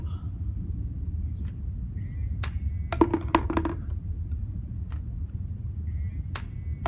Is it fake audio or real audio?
real